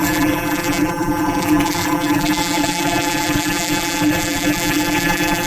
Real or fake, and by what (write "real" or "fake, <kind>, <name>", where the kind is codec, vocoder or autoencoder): fake, vocoder, BigVGAN v2